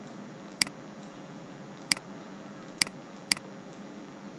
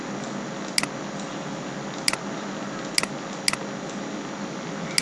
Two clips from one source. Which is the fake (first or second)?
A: first